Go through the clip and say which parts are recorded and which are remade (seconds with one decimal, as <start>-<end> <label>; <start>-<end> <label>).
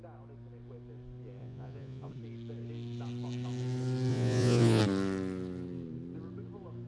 0.0-1.4 recorded; 1.4-2.1 remade; 2.1-4.1 recorded; 4.1-4.8 remade; 4.8-6.9 recorded